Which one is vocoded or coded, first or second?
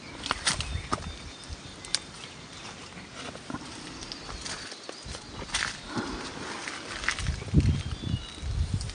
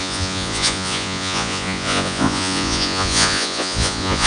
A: second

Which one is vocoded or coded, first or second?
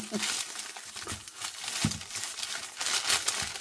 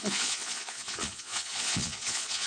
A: second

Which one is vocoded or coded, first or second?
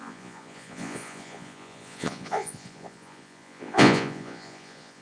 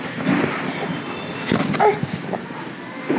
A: first